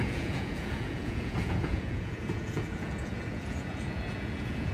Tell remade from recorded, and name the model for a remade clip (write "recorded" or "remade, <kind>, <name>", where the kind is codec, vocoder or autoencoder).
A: remade, vocoder, Vocos